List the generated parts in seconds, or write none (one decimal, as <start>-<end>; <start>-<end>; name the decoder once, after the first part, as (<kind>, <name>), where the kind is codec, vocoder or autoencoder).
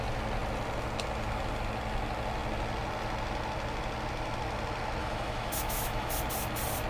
5.0-6.1 (autoencoder, DAC-VAE)